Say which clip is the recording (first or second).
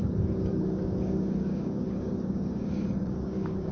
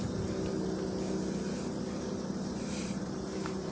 second